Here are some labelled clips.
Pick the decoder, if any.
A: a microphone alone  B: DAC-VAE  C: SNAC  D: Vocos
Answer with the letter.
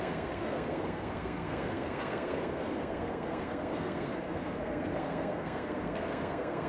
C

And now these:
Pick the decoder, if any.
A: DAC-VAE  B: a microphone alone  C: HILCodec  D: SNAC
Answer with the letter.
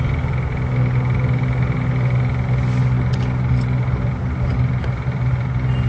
B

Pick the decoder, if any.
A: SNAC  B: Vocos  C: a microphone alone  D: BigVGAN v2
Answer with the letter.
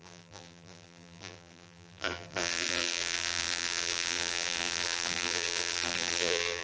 D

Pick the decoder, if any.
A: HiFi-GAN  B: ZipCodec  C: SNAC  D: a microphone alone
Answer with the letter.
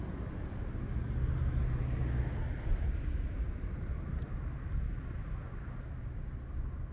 D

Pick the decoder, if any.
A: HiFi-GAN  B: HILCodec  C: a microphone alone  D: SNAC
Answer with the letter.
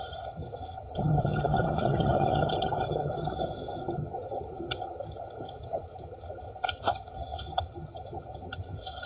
A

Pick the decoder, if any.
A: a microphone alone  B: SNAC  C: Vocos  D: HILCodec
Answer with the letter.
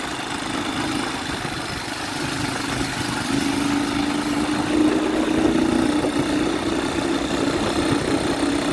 A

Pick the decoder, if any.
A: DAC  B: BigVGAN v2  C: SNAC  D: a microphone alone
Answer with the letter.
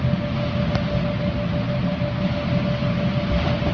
D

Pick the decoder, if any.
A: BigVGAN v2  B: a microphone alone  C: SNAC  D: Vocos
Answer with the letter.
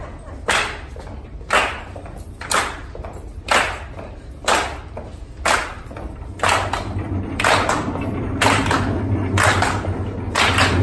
B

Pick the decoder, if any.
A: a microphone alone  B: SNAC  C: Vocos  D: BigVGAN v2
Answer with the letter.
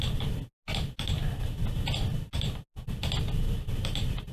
A